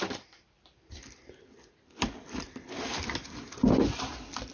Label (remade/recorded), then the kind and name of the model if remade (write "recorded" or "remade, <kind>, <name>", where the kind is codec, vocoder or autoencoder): recorded